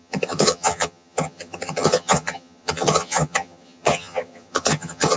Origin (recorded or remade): remade